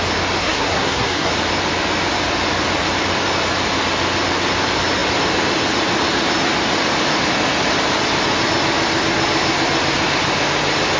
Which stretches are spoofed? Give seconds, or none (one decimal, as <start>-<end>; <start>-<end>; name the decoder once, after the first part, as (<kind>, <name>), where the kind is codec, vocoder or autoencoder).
0.4-1.3 (codec, SNAC)

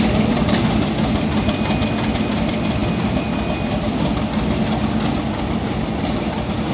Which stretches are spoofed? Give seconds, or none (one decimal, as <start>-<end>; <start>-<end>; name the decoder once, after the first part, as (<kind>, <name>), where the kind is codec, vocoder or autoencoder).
none

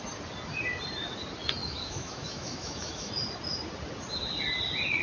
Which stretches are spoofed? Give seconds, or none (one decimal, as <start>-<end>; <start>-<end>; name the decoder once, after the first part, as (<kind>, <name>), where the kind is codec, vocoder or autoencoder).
1.6-3.1 (autoencoder, DAC-VAE)

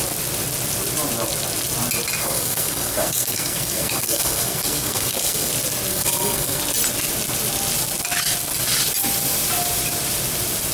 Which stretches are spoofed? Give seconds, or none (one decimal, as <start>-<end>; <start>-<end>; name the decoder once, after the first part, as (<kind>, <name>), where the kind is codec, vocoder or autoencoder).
2.2-5.5 (codec, SNAC); 5.9-6.6

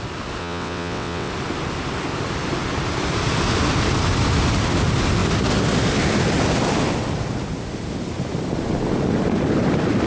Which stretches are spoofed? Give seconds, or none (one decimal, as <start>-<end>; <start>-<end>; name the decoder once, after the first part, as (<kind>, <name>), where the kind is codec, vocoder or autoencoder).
0.4-1.3 (vocoder, WaveNeXt)

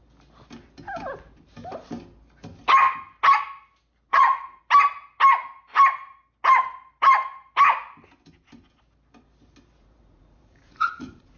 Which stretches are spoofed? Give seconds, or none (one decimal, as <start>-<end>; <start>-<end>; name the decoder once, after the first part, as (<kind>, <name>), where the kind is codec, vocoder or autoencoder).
4.1-4.6 (vocoder, Vocos); 9.8-11.4

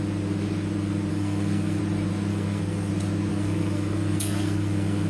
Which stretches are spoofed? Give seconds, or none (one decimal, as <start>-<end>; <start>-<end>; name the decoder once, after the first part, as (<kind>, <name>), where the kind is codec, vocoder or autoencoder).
1.1-1.8 (codec, SNAC); 2.3-2.9; 3.3-5.1